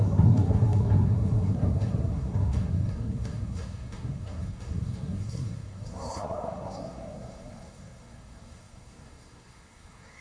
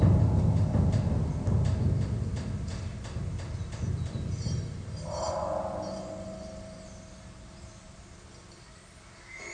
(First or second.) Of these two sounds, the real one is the second